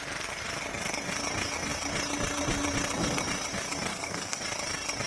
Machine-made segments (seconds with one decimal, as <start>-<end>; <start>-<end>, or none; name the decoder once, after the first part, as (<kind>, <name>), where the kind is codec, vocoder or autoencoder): 3.9-4.4 (codec, SNAC)

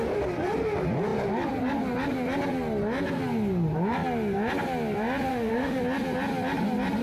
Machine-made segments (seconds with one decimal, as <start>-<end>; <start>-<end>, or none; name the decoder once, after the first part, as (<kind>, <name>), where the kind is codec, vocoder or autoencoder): 5.3-5.8 (autoencoder, DAC-VAE)

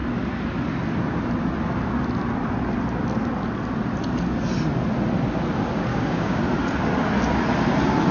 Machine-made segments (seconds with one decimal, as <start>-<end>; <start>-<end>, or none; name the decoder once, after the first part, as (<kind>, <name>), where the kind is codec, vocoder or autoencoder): 5.9-6.4 (codec, DAC)

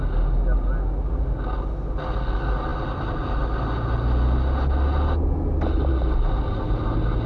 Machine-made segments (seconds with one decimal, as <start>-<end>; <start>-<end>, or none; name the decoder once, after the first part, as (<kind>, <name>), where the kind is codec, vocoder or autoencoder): none

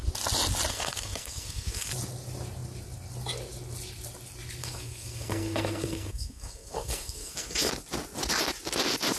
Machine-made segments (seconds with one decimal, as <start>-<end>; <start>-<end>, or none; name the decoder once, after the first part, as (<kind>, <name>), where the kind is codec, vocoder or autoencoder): 0.7-1.9 (codec, SNAC); 4.6-7.7

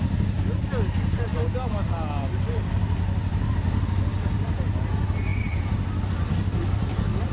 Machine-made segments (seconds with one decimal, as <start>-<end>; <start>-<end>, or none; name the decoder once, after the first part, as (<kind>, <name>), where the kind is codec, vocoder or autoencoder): none

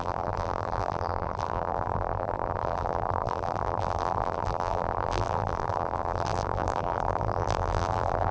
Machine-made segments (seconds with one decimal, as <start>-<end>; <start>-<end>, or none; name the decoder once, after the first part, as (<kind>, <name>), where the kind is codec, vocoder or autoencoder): 0.0-8.3 (vocoder, BigVGAN v2)